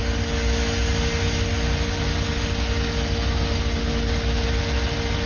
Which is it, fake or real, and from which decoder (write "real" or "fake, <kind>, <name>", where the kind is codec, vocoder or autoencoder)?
real